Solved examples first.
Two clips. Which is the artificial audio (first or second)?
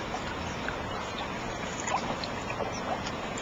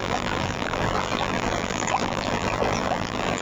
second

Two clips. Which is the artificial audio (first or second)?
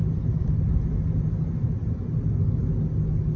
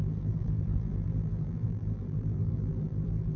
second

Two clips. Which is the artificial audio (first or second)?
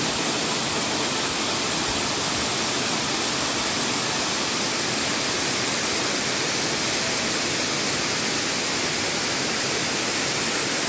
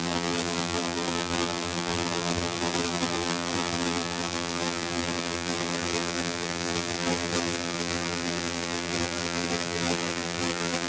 second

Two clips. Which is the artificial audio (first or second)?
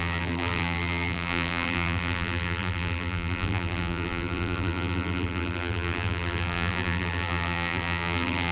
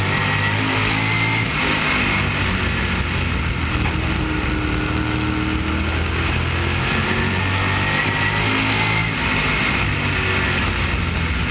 first